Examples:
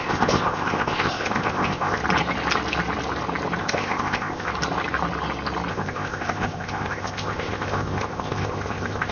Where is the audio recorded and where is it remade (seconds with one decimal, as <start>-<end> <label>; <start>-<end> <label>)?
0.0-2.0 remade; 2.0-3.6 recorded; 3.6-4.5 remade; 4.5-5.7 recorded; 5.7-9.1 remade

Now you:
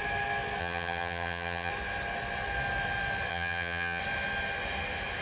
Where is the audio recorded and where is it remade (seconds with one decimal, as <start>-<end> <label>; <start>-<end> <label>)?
0.0-0.6 recorded; 0.6-1.7 remade; 1.7-3.3 recorded; 3.3-4.0 remade; 4.0-5.2 recorded

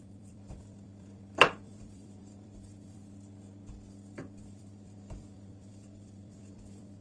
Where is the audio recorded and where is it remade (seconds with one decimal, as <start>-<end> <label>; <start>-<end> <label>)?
0.0-3.0 remade; 3.0-3.9 recorded; 3.9-7.0 remade